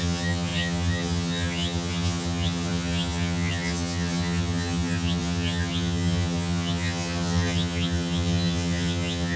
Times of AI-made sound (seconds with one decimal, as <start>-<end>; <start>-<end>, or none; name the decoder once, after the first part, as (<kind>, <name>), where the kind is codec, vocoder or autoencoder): 0.0-9.4 (vocoder, HiFi-GAN)